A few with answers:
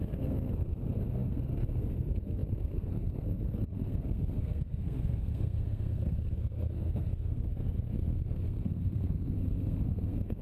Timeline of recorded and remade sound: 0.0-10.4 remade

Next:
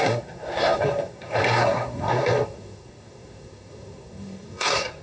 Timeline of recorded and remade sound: 0.0-5.0 remade

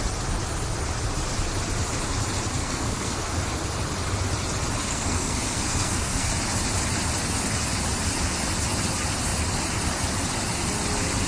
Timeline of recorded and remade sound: 0.0-2.6 recorded; 2.6-3.2 remade; 3.2-4.9 recorded; 4.9-6.3 remade; 6.3-11.3 recorded